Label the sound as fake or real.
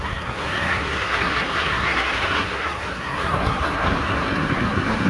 fake